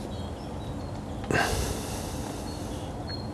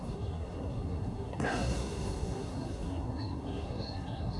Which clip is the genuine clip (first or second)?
first